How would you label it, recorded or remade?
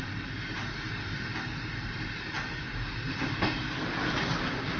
recorded